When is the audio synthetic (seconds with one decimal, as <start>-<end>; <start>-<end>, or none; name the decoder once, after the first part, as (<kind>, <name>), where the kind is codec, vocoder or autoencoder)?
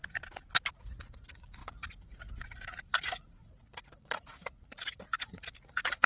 0.7-6.1 (vocoder, Vocos)